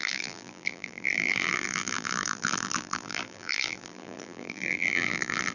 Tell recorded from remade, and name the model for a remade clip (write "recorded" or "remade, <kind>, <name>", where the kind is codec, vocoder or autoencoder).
remade, vocoder, BigVGAN v2